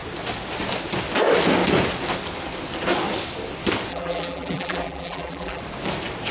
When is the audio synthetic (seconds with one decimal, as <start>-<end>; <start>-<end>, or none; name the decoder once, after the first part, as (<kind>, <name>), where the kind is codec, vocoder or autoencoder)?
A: 3.9-5.6 (vocoder, BigVGAN v2)